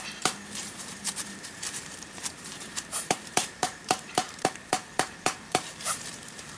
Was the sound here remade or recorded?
remade